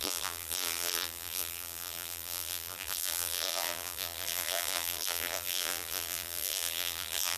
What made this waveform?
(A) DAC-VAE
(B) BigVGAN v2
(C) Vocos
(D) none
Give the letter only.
B